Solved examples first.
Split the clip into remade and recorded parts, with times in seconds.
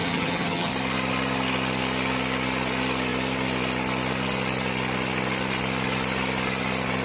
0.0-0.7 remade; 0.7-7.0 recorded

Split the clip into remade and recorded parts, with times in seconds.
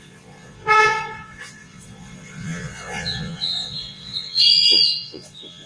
0.0-5.7 remade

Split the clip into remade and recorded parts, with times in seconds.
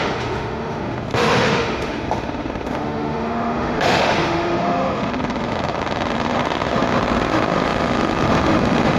0.0-9.0 remade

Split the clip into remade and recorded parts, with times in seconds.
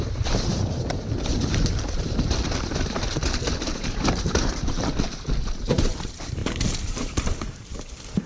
0.0-6.4 remade; 6.4-6.9 recorded; 6.9-8.3 remade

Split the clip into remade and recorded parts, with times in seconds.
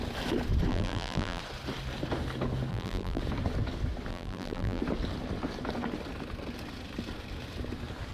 0.0-0.7 recorded; 0.7-1.4 remade; 1.4-2.7 recorded; 2.7-3.2 remade; 3.2-4.1 recorded; 4.1-4.8 remade; 4.8-8.1 recorded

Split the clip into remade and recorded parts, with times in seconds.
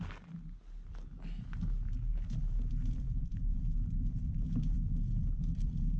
0.0-2.1 recorded; 2.1-6.0 remade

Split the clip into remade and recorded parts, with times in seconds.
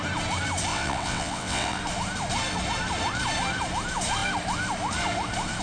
0.0-0.7 recorded; 0.7-1.8 remade; 1.8-5.6 recorded